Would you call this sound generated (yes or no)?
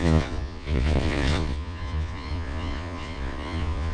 yes